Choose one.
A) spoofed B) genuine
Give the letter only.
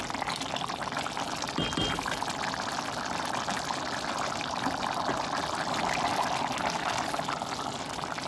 B